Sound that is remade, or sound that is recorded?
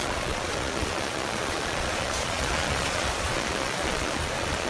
remade